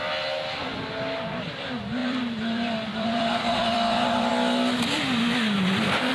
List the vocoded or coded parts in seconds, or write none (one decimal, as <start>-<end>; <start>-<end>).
2.0-4.3